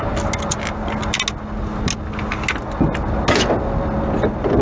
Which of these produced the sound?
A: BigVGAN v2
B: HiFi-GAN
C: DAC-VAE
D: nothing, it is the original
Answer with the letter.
D